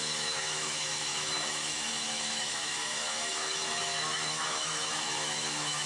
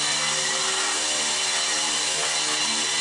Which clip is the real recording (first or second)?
second